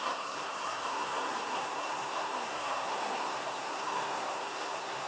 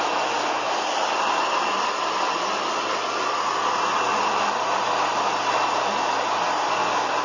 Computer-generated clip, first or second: first